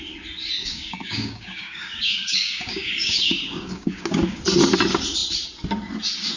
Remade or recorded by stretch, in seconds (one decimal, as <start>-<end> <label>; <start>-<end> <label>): 0.0-0.6 recorded; 0.6-4.4 remade; 4.4-6.4 recorded